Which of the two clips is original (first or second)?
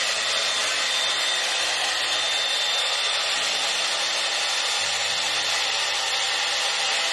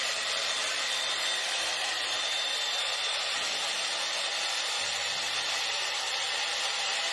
first